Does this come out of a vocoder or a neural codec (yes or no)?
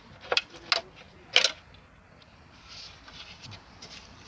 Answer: no